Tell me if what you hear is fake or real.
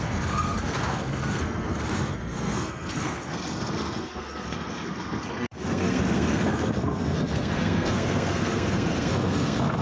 fake